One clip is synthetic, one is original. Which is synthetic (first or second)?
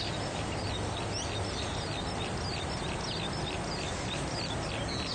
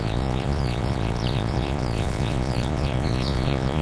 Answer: second